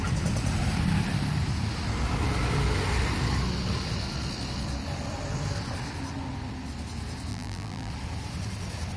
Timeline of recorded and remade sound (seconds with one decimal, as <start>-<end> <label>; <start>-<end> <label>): 0.0-7.3 recorded; 7.3-7.9 remade; 7.9-9.0 recorded